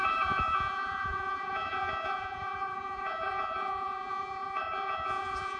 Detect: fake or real fake